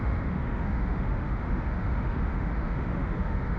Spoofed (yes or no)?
yes